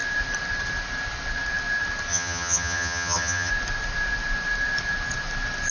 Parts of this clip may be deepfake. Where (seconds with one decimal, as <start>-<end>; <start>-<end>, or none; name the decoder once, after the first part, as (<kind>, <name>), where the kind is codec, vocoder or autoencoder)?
2.1-3.5 (vocoder, HiFi-GAN)

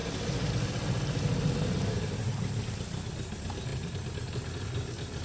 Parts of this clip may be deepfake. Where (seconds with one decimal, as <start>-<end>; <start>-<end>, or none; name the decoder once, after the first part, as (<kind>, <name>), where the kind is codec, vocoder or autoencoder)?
none